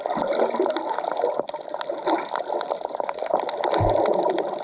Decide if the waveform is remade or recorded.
recorded